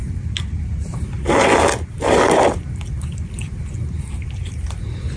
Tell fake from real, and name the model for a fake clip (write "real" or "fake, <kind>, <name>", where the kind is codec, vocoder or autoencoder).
real